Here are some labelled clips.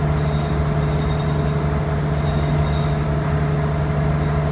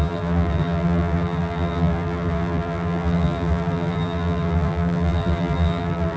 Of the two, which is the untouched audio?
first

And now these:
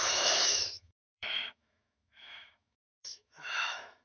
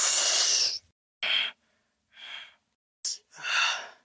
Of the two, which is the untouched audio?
second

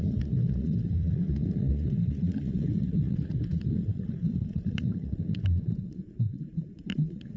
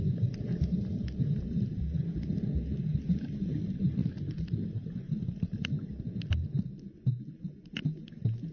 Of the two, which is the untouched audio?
second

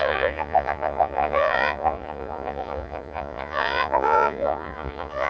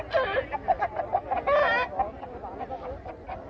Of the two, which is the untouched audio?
second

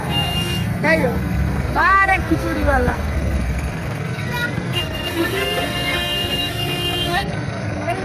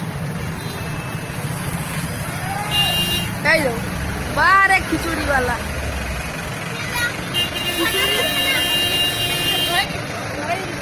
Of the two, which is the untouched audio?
second